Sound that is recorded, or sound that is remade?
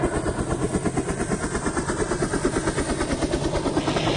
recorded